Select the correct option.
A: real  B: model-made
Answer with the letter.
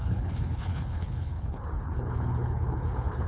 B